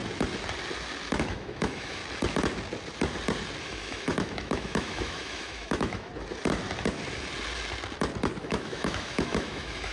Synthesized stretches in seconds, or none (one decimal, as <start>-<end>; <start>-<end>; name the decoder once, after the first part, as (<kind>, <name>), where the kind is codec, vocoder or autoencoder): 1.2-2.0 (autoencoder, DAC-VAE); 3.6-6.1; 8.4-9.9